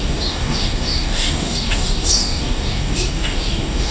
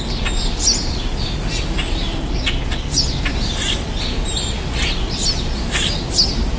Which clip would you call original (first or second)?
second